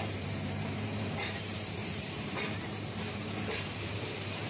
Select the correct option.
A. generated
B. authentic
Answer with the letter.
A